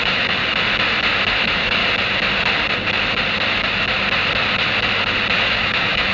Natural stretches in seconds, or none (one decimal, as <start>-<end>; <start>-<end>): 0.4-1.4; 1.8-5.5